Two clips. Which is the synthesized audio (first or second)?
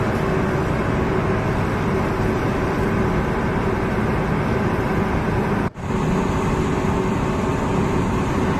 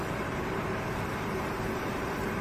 second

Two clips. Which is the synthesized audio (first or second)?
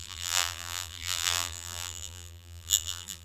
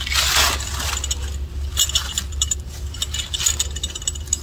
first